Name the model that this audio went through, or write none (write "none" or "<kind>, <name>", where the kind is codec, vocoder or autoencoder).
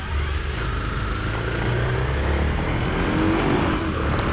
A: none